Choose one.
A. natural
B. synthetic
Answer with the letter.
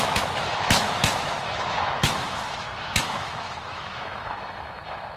B